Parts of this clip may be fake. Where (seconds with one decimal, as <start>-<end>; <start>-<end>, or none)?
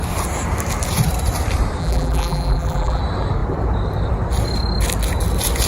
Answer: 1.8-3.0